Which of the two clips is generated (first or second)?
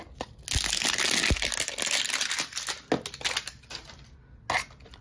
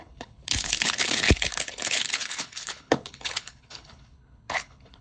second